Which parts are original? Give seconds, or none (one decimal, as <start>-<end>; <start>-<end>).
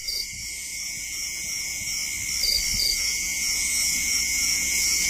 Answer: 2.0-2.8